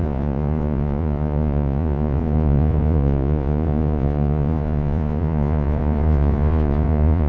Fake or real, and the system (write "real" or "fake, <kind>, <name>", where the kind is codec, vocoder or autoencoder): fake, vocoder, Vocos